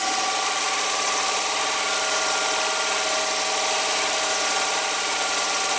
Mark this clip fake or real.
real